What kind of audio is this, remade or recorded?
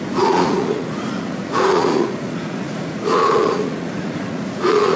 remade